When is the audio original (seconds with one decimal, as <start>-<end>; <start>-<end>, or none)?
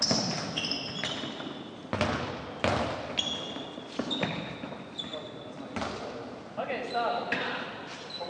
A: 0.0-8.3